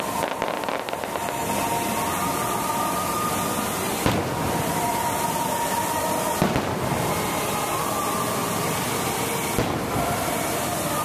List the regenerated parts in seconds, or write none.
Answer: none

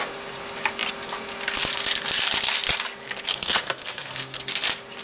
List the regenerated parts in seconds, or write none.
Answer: 3.3-4.5